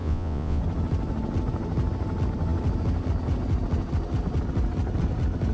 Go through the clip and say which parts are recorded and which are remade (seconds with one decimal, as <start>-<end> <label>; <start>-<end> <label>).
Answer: 0.0-0.6 remade; 0.6-5.5 recorded